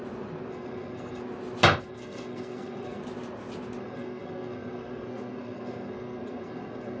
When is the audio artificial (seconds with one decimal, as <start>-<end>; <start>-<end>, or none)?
0.5-1.2; 1.8-3.0; 3.8-7.0